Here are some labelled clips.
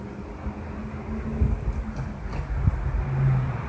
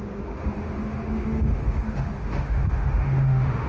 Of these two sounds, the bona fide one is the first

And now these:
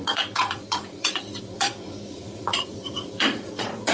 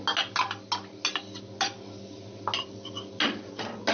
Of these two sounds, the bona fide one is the second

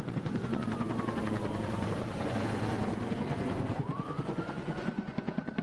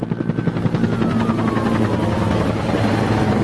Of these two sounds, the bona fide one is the second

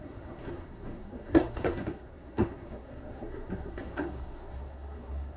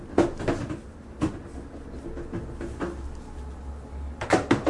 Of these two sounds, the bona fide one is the second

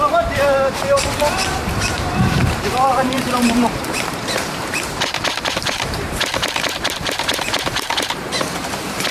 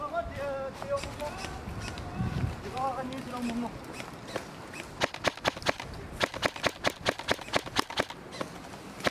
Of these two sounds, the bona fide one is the second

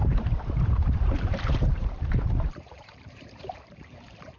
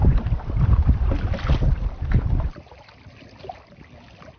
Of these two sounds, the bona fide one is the second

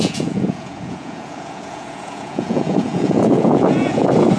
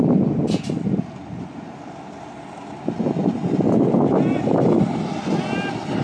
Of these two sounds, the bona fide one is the second